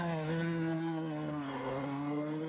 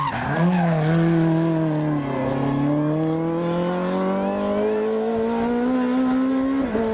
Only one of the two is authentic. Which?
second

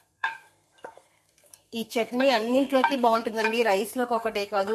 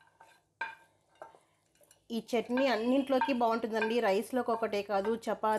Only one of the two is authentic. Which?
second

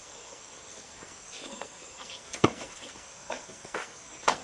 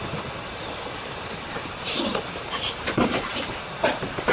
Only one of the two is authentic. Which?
second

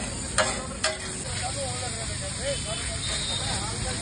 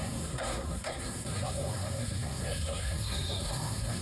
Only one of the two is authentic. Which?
first